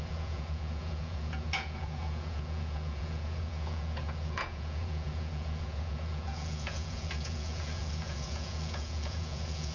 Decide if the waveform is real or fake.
fake